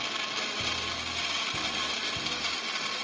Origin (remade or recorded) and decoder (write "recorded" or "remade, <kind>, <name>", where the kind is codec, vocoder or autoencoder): recorded